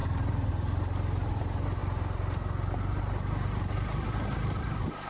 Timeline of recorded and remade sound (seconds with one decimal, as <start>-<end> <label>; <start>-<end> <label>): 0.0-5.1 recorded